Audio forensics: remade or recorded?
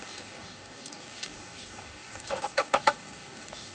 remade